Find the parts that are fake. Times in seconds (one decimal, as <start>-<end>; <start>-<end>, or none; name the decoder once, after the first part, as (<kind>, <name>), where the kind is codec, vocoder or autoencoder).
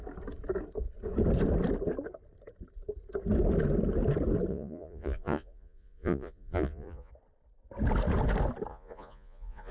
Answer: 4.5-7.1 (vocoder, Vocos); 8.7-9.7